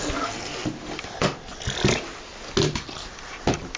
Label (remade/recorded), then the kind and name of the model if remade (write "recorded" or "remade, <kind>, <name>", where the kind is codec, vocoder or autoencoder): recorded